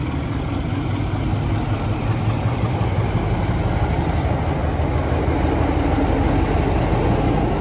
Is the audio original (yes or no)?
yes